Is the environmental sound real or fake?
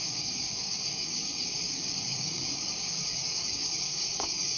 fake